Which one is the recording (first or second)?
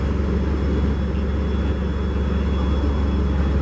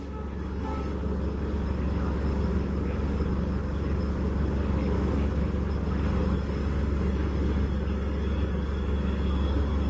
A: first